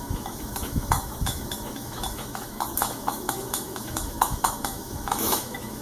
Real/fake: fake